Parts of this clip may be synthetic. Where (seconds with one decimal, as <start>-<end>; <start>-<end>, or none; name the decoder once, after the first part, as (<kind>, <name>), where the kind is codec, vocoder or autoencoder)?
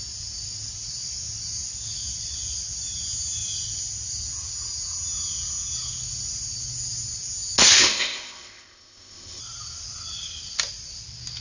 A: 7.8-9.4 (codec, ZipCodec)